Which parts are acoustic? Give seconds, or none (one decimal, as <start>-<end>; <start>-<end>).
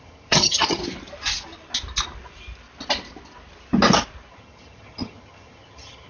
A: 0.8-4.3